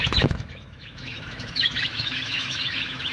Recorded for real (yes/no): no